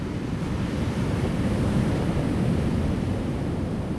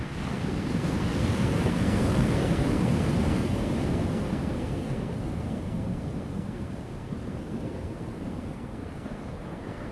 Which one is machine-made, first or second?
second